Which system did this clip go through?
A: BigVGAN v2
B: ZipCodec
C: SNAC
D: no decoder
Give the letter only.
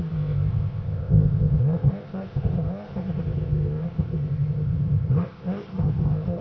B